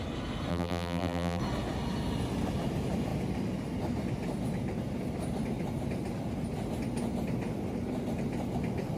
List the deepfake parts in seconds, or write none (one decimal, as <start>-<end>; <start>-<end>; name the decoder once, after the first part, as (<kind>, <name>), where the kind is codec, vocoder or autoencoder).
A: 0.5-1.4 (vocoder, BigVGAN v2)